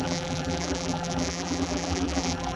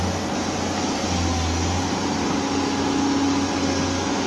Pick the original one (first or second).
second